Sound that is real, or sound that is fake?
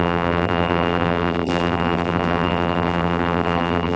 fake